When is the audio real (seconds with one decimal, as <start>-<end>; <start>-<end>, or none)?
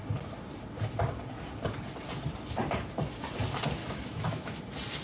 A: 0.0-3.8; 4.6-5.0